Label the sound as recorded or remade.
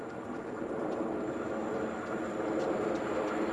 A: recorded